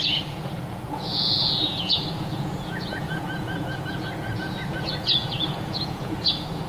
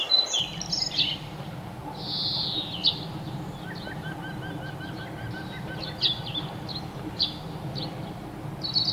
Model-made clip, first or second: first